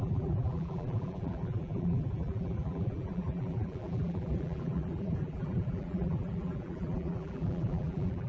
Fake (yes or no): yes